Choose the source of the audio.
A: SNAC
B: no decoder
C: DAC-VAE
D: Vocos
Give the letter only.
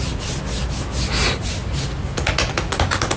B